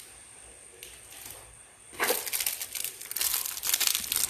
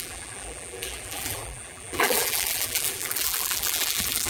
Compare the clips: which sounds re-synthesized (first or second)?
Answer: second